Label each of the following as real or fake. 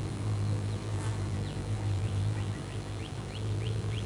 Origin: fake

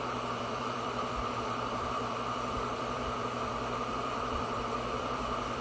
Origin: fake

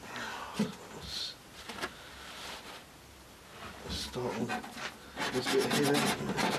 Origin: real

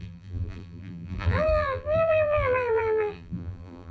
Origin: fake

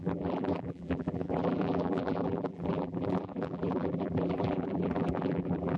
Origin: fake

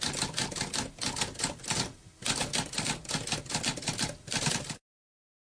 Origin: real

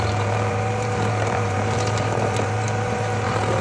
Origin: fake